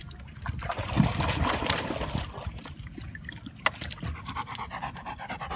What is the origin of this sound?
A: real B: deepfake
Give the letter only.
A